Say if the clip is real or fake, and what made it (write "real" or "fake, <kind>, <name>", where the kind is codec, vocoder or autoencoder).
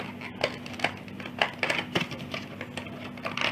real